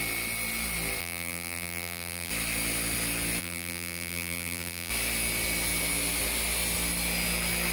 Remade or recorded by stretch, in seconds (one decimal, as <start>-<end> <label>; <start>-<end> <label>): 0.0-1.0 recorded; 1.0-2.3 remade; 2.3-3.4 recorded; 3.4-4.9 remade; 4.9-7.7 recorded